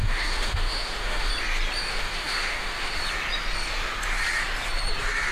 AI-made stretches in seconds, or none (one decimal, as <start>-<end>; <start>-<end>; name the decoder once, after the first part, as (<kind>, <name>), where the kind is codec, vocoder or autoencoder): 0.0-1.3 (autoencoder, DAC-VAE); 1.9-3.0